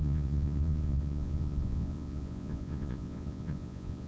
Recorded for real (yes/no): no